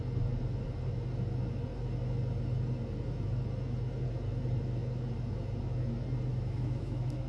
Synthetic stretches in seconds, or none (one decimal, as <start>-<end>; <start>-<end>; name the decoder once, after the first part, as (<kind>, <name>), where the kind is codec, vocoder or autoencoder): 6.3-7.3 (autoencoder, DAC-VAE)